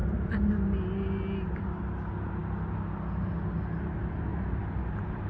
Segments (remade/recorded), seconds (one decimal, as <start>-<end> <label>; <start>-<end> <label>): 0.0-0.5 remade; 0.5-4.3 recorded; 4.3-5.3 remade